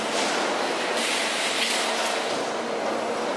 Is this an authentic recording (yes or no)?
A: yes